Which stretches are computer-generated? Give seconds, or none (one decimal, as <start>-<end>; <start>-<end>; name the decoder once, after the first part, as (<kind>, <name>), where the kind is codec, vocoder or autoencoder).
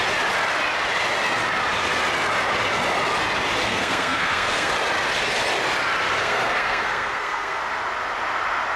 3.6-4.7 (codec, SNAC); 6.2-7.6